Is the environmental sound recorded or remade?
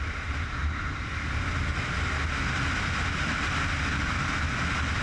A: recorded